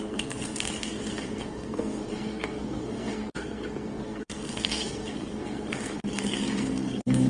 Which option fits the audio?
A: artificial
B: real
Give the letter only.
A